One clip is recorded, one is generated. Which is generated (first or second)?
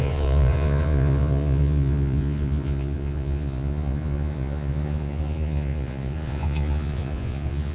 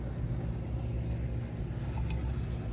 first